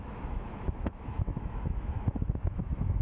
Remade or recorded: remade